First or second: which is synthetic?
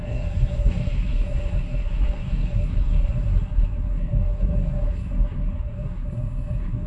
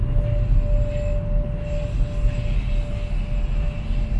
first